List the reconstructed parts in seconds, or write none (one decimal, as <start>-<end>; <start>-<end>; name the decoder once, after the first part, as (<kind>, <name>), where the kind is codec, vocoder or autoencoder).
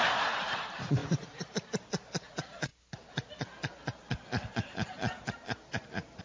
1.0-1.8 (vocoder, BigVGAN v2)